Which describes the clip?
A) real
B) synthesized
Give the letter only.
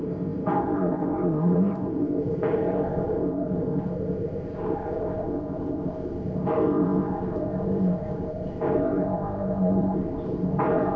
B